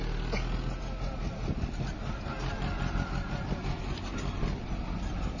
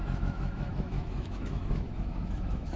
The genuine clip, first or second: first